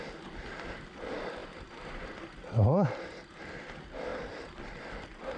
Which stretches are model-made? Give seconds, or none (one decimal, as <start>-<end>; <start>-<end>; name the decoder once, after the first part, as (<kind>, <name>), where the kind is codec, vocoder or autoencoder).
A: none